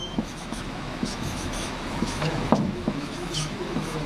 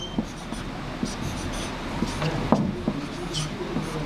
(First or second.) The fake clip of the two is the first